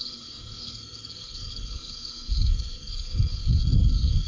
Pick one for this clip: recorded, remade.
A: remade